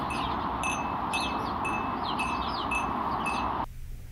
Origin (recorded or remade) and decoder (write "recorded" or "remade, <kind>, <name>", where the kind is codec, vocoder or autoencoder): recorded